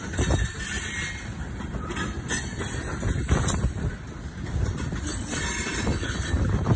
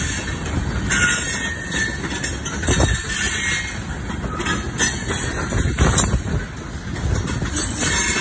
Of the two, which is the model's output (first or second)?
first